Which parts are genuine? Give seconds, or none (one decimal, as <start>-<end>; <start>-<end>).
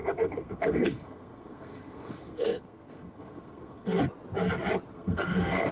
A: 4.0-4.9